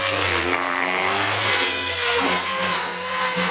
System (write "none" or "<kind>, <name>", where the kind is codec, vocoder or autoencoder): codec, SNAC